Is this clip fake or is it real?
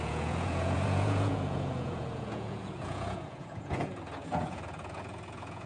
fake